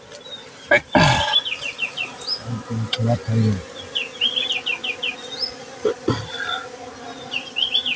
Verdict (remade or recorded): recorded